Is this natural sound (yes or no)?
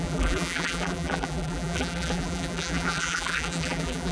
no